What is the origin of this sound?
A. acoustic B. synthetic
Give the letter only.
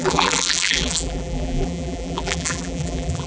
B